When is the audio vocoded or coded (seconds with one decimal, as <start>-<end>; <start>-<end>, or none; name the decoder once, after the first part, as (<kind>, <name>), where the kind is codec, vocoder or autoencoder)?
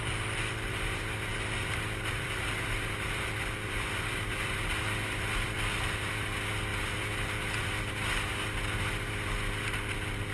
none